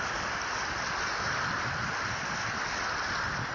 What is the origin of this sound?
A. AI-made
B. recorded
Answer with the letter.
B